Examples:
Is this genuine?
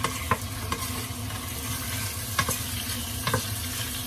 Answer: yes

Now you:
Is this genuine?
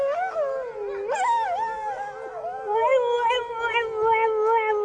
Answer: yes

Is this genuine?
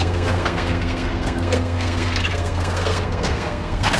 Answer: no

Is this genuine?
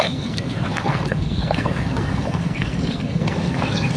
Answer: no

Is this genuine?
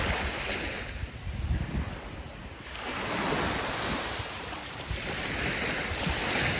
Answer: yes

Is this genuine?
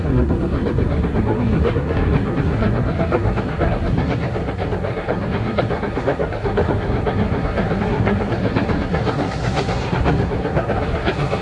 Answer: no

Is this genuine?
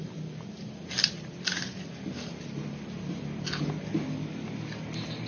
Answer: yes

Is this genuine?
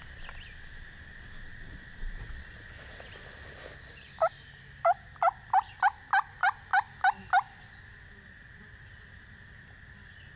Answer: yes